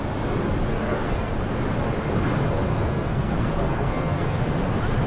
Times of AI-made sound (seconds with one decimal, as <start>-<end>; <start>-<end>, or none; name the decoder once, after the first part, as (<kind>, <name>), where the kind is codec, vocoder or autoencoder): 0.7-1.3 (codec, SNAC); 2.7-4.5